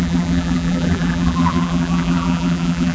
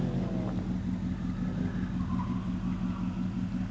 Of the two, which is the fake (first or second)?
first